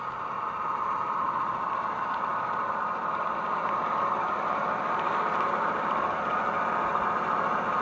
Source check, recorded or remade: recorded